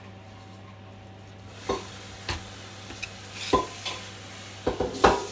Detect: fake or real real